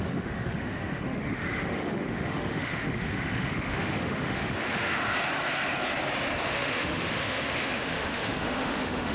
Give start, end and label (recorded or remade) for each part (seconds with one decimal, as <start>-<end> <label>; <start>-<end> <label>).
0.0-5.0 remade; 5.0-6.4 recorded; 6.4-9.1 remade